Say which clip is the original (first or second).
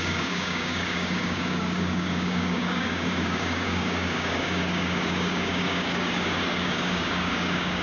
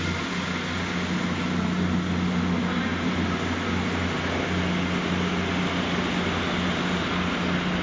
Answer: second